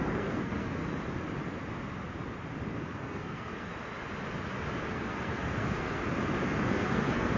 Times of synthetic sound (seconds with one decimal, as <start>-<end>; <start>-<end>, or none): 0.0-0.8; 2.8-3.7; 4.9-6.0; 6.7-7.4

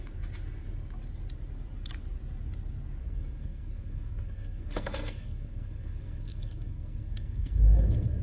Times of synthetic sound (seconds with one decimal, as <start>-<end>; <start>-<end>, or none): 3.0-8.2